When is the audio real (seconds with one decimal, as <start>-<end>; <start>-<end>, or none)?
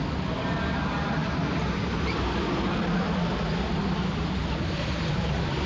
0.0-5.7